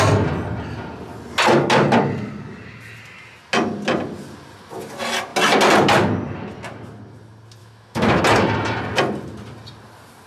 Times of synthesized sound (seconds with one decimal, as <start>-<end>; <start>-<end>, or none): 7.6-8.2